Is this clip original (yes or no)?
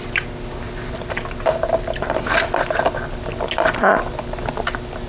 yes